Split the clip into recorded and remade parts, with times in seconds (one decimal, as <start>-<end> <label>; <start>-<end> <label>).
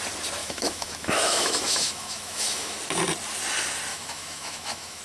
0.0-0.4 recorded; 0.4-2.8 remade; 2.8-3.9 recorded; 3.9-5.0 remade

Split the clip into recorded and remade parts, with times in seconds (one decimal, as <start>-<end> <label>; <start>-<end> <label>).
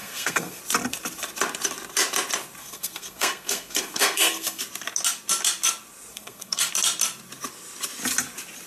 0.0-0.6 remade; 0.6-2.6 recorded; 2.6-4.6 remade; 4.6-6.1 recorded; 6.1-6.7 remade; 6.7-8.7 recorded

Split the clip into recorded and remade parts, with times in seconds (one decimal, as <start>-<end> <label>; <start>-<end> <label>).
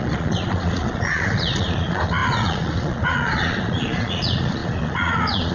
0.0-5.5 remade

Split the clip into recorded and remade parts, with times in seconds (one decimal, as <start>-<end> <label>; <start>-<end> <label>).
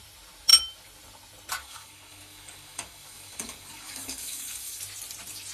0.0-1.6 recorded; 1.6-4.8 remade; 4.8-5.5 recorded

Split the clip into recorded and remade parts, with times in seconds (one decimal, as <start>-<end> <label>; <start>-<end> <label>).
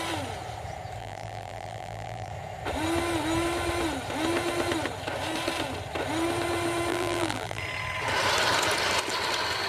0.0-1.0 recorded; 1.0-2.3 remade; 2.3-6.9 recorded; 6.9-7.6 remade; 7.6-9.7 recorded